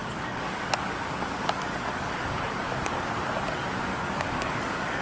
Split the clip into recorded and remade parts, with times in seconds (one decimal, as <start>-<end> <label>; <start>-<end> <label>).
0.0-3.0 remade; 3.0-3.9 recorded; 3.9-5.0 remade